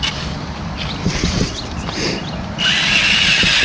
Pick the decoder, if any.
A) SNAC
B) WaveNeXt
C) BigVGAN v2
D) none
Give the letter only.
D